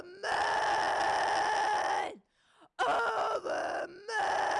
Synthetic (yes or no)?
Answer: no